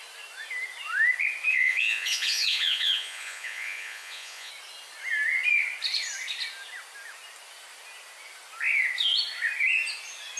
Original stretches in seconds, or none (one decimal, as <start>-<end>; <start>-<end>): 0.0-1.5; 4.5-10.4